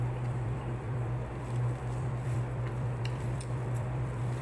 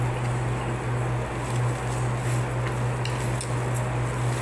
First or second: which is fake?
first